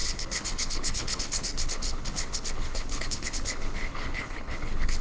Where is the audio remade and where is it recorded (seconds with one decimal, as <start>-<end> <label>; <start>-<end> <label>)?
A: 0.0-5.0 remade